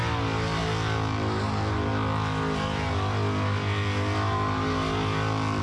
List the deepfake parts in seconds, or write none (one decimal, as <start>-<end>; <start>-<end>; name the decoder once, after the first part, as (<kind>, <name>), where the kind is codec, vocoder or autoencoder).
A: none

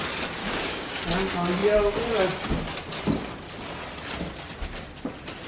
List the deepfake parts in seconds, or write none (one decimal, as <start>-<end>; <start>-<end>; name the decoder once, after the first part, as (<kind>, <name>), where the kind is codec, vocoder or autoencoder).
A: 0.4-1.0 (codec, DAC)

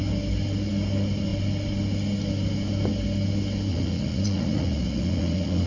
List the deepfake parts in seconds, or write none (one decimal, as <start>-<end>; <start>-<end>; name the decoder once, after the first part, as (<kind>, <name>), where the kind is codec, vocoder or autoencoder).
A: 3.7-5.7 (vocoder, Vocos)

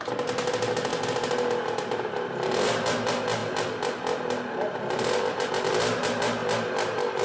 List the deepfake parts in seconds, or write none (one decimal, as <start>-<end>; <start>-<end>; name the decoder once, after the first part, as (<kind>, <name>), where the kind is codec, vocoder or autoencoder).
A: none